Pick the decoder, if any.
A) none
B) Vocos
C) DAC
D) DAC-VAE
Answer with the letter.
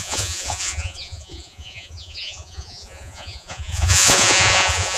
B